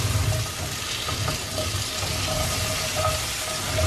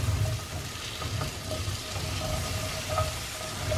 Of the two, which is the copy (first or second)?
second